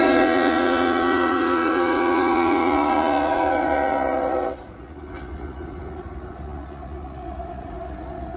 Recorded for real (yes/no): no